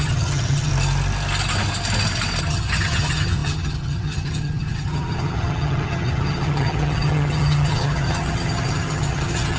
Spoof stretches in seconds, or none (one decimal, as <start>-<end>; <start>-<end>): 0.0-0.7; 2.4-9.6